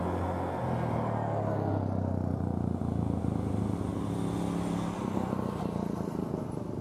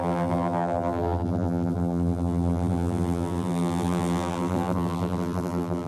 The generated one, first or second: second